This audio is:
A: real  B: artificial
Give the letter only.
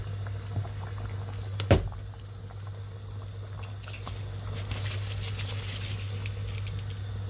A